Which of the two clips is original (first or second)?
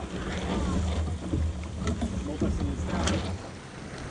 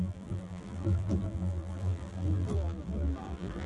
first